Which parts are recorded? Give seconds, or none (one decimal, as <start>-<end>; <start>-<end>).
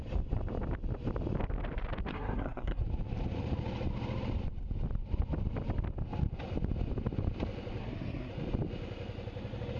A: 0.0-2.1; 2.8-7.8; 8.3-9.8